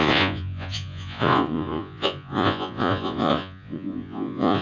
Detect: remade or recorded remade